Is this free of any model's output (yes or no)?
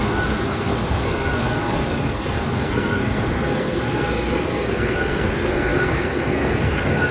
no